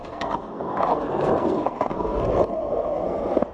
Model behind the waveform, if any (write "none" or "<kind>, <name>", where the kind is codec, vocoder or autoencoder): codec, SNAC